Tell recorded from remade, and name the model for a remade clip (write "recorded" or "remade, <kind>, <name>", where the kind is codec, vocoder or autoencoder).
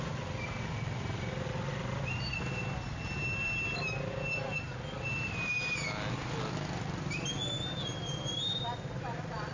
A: recorded